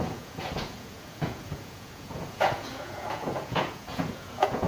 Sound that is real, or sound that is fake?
fake